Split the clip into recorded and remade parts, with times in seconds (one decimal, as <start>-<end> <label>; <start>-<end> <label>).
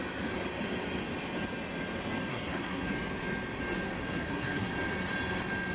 0.0-2.3 recorded; 2.3-2.9 remade; 2.9-4.0 recorded; 4.0-4.7 remade; 4.7-5.7 recorded